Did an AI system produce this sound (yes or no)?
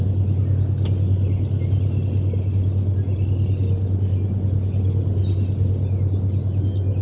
no